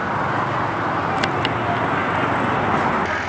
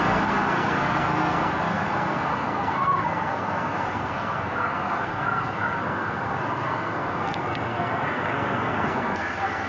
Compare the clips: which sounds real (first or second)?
first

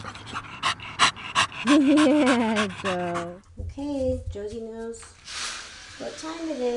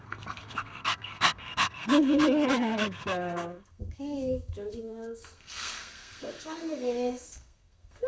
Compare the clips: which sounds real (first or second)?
first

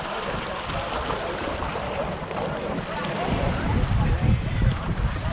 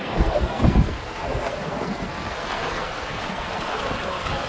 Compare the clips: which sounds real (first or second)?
first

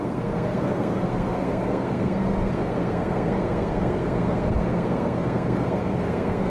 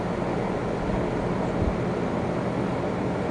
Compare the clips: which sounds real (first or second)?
second